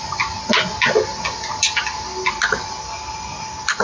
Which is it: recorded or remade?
recorded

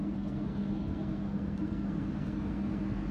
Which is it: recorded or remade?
remade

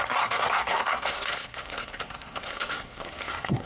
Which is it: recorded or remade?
remade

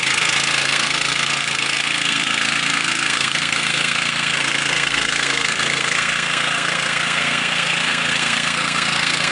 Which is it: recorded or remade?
remade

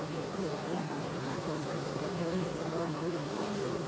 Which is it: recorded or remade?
remade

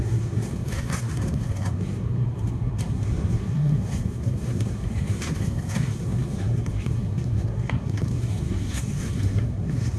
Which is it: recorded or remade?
remade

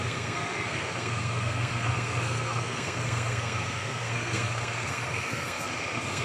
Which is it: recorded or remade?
remade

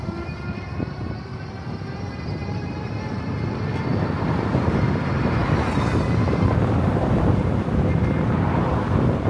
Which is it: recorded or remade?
recorded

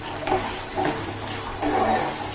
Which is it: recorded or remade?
recorded